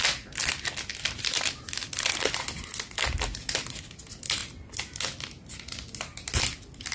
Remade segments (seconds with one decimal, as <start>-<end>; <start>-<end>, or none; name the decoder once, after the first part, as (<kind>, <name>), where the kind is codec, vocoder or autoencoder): none

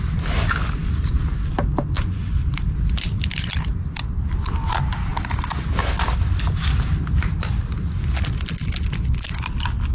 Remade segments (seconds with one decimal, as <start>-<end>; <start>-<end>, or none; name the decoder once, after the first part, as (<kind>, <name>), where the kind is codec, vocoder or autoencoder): none